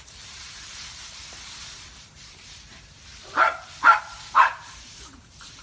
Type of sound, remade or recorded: remade